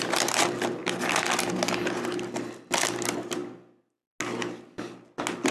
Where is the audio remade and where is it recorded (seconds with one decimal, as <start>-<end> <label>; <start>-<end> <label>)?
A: 0.0-5.5 recorded